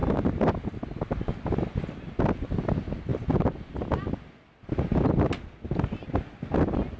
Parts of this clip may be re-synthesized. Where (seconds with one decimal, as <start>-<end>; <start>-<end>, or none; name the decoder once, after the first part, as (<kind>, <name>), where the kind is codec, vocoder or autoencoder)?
none